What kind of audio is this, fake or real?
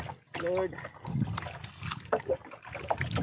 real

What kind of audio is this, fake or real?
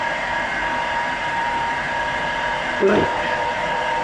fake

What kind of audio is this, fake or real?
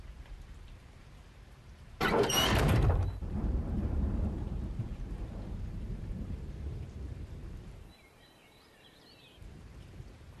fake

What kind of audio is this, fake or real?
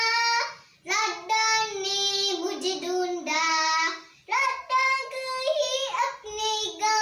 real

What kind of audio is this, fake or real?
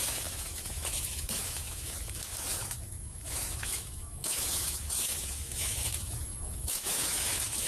fake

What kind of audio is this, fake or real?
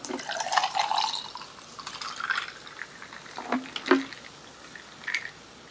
real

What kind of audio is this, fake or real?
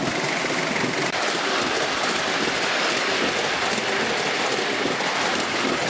real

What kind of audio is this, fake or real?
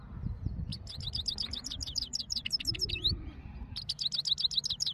real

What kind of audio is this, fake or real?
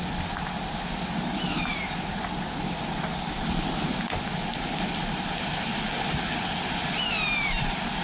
real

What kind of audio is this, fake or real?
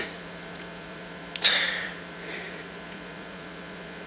fake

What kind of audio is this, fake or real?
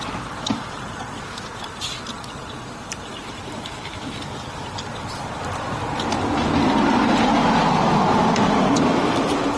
real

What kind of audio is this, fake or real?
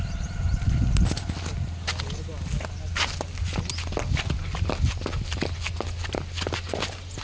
real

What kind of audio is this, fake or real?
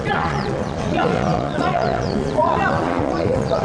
fake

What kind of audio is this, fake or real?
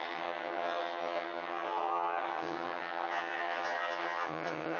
fake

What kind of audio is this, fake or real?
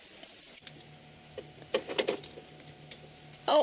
real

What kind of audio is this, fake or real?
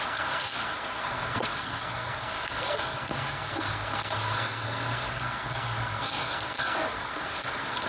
fake